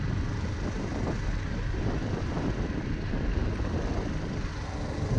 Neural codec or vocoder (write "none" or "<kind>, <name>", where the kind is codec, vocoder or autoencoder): none